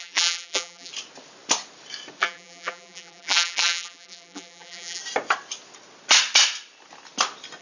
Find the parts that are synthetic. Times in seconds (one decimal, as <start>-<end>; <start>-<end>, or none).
0.0-0.9; 2.2-5.0